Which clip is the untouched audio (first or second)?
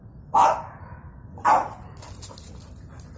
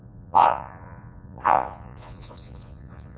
first